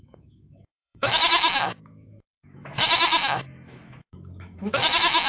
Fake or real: fake